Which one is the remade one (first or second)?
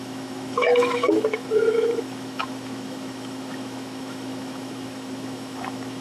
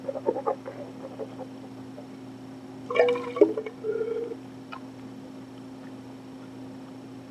first